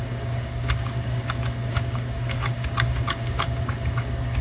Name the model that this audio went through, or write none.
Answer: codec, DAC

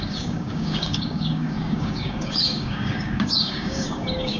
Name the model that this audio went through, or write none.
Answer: codec, DAC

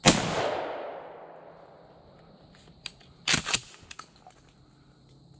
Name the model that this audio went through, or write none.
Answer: none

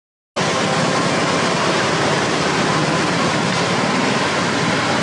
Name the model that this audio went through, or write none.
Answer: none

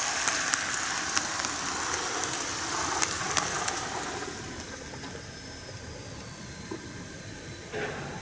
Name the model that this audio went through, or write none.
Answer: none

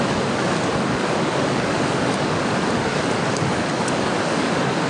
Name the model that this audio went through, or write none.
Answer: codec, DAC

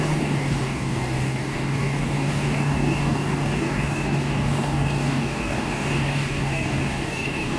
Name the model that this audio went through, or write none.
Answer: codec, DAC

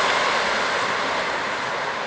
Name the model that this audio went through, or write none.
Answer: none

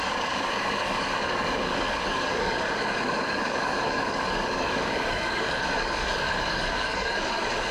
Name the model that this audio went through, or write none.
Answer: codec, DAC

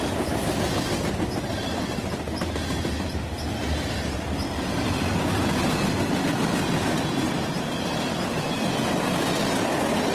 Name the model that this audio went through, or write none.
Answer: none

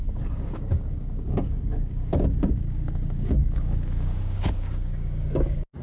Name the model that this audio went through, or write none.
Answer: codec, DAC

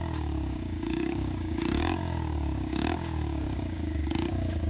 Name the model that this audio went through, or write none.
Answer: codec, DAC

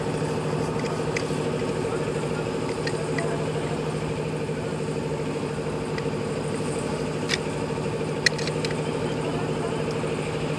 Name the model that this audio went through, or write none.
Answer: none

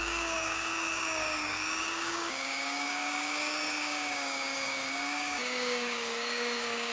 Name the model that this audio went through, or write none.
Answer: codec, DAC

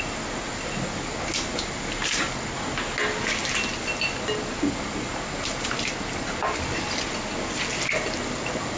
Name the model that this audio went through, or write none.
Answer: none